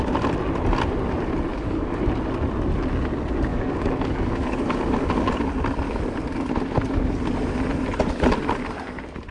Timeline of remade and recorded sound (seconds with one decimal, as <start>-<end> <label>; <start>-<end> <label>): 0.0-1.5 recorded; 1.5-2.0 remade; 2.0-3.5 recorded; 3.5-5.3 remade; 5.3-9.3 recorded